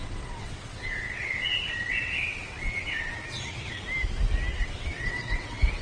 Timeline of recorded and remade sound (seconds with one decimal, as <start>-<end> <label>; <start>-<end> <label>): 0.0-3.1 remade; 3.1-4.5 recorded; 4.5-5.8 remade